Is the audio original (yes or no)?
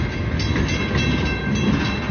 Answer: yes